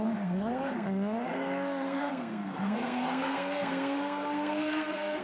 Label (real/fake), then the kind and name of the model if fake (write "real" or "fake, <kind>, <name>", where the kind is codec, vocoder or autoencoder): fake, codec, SNAC